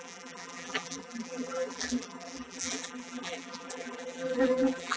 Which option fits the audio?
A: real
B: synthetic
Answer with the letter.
B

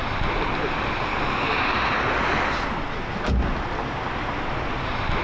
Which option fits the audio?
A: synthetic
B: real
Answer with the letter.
B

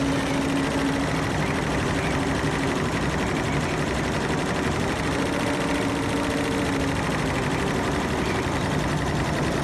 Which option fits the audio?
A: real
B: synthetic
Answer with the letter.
A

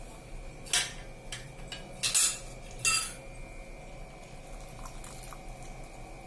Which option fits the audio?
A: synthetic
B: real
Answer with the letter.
B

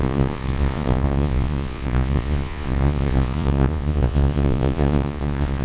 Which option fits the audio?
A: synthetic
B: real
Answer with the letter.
A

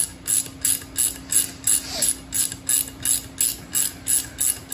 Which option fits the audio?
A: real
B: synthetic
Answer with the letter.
A